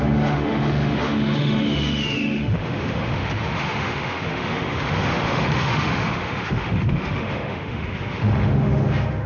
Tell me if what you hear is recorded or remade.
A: remade